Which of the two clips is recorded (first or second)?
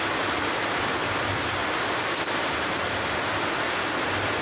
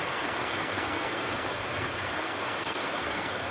first